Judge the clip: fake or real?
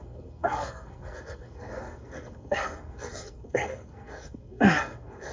fake